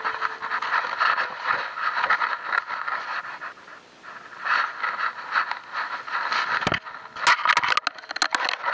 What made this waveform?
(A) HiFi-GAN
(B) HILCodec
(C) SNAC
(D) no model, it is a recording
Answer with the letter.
D